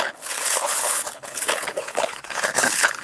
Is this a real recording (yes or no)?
no